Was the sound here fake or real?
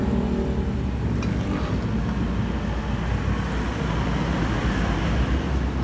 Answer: real